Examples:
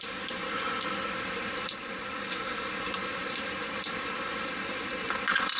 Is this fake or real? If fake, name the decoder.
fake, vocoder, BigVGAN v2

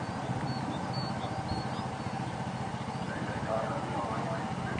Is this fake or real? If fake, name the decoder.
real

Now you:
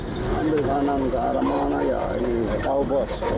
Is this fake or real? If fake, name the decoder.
real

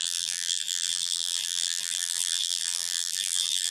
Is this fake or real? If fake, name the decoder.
fake, vocoder, BigVGAN v2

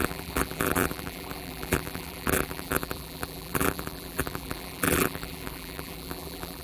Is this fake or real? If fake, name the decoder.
fake, vocoder, BigVGAN v2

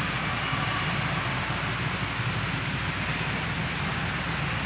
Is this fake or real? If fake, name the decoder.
real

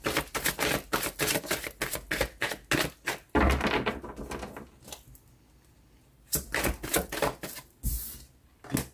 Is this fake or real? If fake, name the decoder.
real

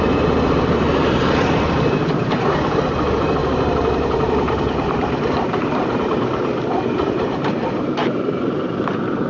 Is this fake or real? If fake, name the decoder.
fake, vocoder, BigVGAN v2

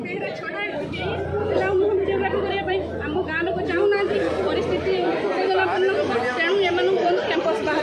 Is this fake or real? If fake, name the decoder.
fake, vocoder, BigVGAN v2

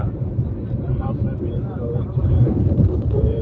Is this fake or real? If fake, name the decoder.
fake, vocoder, BigVGAN v2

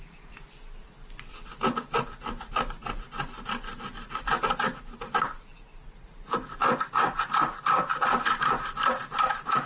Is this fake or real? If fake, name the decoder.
fake, vocoder, BigVGAN v2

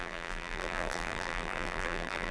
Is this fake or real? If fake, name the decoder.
fake, vocoder, BigVGAN v2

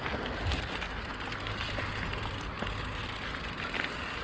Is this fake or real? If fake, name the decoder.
real